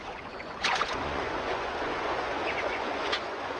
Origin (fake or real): fake